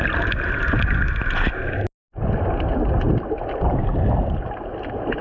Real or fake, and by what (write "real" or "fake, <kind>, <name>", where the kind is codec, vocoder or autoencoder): real